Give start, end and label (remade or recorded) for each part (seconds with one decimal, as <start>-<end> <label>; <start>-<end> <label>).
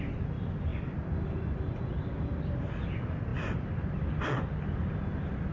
0.0-0.7 recorded; 0.7-2.5 remade; 2.5-3.3 recorded; 3.3-5.5 remade